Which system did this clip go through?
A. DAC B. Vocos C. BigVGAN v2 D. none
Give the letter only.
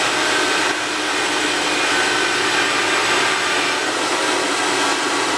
D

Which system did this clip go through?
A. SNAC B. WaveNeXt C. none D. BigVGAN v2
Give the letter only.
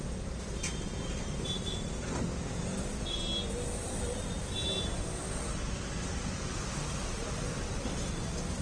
C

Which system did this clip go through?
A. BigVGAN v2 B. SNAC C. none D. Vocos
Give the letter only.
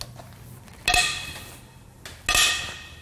C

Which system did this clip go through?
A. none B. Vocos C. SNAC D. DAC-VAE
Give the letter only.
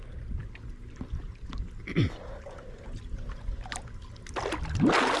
A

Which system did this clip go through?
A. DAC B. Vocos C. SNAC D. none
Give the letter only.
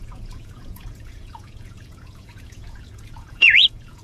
B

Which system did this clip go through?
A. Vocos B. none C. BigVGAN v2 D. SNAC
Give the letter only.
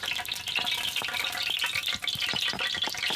B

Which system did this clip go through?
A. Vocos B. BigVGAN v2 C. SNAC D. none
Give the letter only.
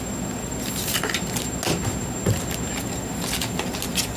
D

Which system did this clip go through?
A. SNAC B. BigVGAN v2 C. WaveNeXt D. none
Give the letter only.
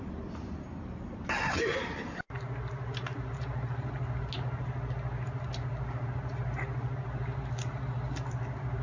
D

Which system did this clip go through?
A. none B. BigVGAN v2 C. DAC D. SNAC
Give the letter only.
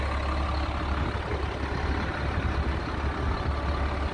A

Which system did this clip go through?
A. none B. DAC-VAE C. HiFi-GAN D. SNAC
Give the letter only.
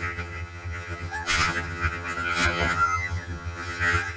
C